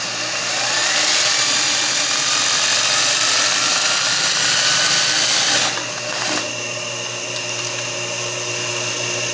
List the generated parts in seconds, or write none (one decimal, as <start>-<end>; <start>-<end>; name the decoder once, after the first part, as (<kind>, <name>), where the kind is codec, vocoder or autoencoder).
0.0-0.8 (vocoder, BigVGAN v2); 1.5-3.4; 8.2-9.3